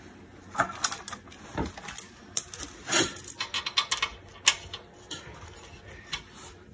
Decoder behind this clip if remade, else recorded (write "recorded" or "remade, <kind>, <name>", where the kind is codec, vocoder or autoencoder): recorded